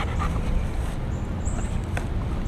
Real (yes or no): yes